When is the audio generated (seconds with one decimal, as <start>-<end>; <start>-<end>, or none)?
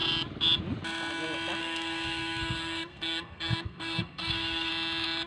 1.6-4.7